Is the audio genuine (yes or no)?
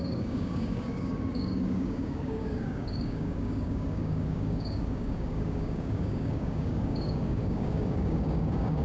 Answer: no